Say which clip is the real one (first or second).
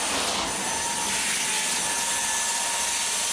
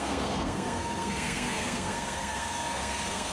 first